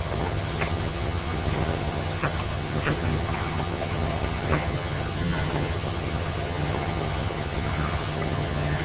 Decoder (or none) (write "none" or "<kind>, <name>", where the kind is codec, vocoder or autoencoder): vocoder, HiFi-GAN